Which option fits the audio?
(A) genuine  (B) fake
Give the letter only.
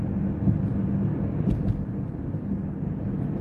A